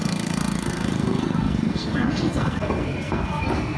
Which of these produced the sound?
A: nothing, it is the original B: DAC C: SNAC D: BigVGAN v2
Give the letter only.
C